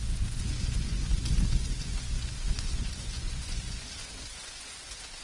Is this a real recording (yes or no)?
no